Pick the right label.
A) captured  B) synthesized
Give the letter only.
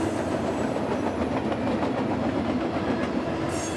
A